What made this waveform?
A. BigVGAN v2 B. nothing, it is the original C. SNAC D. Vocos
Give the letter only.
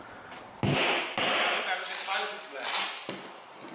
B